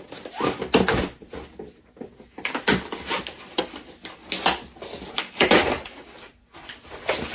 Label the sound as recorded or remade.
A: recorded